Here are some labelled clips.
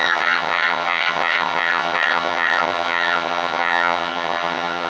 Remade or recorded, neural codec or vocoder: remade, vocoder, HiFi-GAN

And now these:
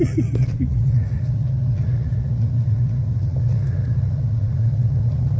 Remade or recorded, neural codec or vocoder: remade, vocoder, Vocos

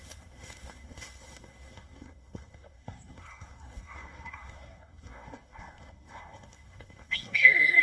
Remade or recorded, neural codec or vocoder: remade, codec, SNAC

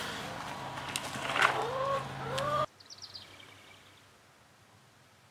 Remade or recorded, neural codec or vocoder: recorded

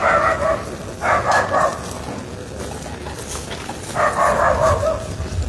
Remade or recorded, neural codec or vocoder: recorded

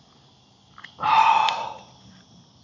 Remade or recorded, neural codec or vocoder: recorded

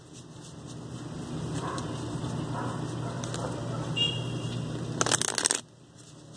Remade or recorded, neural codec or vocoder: recorded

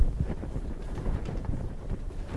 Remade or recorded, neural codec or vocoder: remade, vocoder, BigVGAN v2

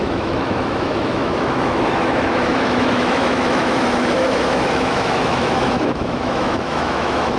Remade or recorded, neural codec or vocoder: remade, autoencoder, DAC-VAE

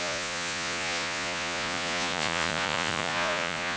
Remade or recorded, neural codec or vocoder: remade, vocoder, Vocos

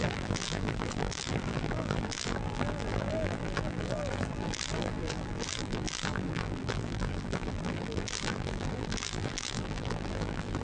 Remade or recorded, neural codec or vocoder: remade, vocoder, BigVGAN v2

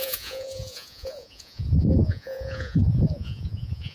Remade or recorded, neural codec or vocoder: remade, vocoder, Vocos